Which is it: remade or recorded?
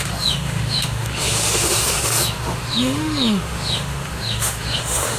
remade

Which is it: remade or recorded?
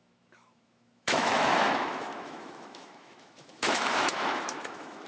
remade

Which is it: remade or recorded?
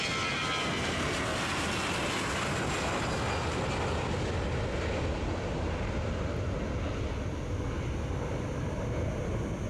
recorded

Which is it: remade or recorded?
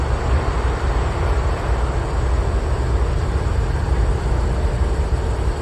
recorded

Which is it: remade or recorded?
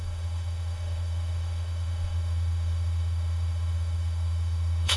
remade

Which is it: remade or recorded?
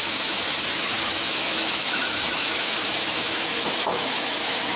remade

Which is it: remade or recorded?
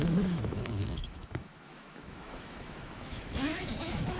remade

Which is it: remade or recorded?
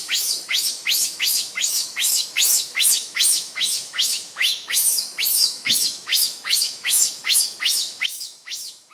remade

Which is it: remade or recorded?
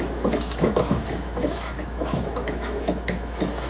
remade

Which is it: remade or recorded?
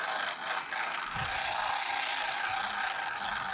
recorded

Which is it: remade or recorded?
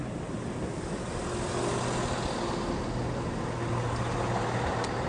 recorded